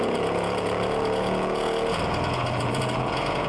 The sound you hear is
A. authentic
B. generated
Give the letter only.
B